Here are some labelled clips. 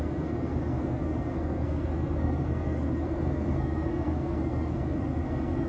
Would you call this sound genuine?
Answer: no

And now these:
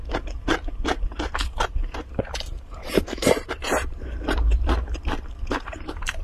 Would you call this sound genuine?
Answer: no